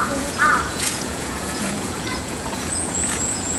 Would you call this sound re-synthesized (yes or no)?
yes